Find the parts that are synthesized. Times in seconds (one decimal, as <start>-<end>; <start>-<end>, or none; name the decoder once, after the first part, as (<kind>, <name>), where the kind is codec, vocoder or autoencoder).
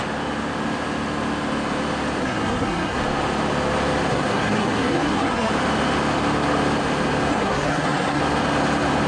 2.2-3.0 (codec, SNAC); 4.1-5.5; 7.3-8.2